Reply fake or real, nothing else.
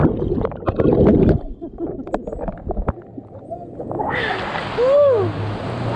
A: real